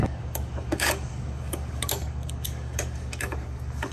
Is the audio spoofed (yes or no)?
yes